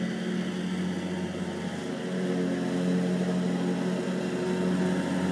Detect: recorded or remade recorded